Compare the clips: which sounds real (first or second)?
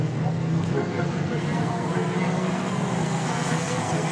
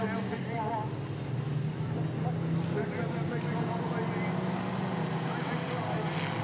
second